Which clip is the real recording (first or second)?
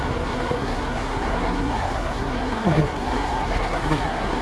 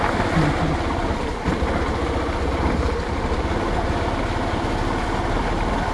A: second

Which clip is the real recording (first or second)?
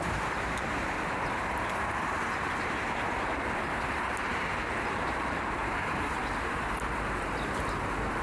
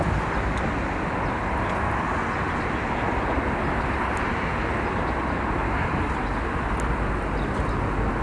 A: second